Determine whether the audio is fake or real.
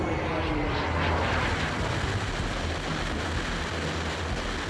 real